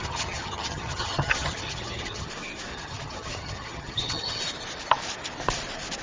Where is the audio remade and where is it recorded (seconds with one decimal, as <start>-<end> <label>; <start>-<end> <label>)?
0.0-2.3 remade; 2.3-2.7 recorded; 2.7-4.4 remade; 4.4-6.0 recorded